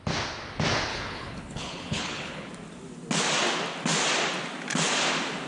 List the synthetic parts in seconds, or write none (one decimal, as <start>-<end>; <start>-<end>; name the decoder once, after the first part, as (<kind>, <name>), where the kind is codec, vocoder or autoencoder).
0.9-2.5 (codec, HILCodec)